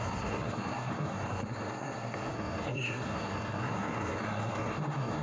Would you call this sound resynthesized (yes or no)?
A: yes